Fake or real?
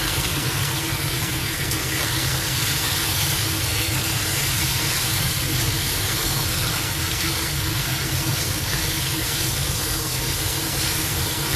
fake